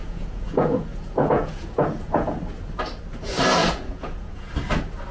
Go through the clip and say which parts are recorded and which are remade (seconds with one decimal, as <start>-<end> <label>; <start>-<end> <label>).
0.0-2.4 remade; 2.4-3.6 recorded; 3.6-4.5 remade; 4.5-5.1 recorded